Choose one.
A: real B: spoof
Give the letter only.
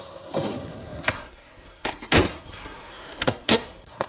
B